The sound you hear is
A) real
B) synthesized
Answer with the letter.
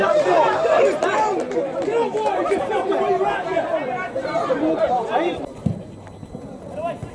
B